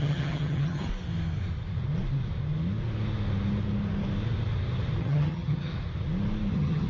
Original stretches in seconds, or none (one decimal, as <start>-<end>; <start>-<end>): 0.9-5.0; 5.7-6.5